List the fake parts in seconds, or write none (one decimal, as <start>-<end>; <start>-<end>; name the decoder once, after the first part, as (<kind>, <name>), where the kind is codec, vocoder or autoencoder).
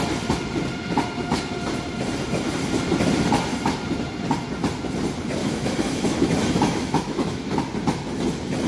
5.4-7.6 (autoencoder, DAC-VAE)